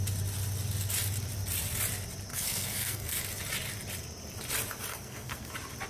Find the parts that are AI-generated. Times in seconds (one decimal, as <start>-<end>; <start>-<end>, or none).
2.3-3.2; 4.9-5.5